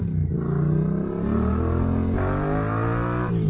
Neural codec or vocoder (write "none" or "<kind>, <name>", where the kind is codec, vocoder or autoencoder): none